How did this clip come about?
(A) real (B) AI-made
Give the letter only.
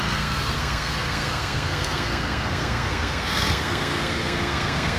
B